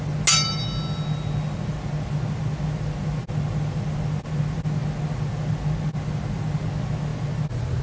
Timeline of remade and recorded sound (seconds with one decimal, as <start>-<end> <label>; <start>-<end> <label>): 0.0-7.8 recorded